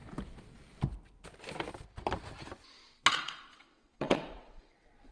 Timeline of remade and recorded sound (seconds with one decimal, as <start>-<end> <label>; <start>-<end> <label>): 0.0-3.1 recorded; 3.1-5.1 remade